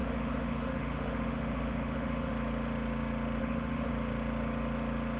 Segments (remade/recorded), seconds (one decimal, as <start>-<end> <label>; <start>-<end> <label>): 0.0-2.3 remade; 2.3-3.4 recorded; 3.4-3.9 remade; 3.9-5.2 recorded